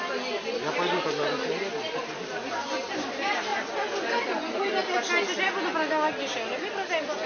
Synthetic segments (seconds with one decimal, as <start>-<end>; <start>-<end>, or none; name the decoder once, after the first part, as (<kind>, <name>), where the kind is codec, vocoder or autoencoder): none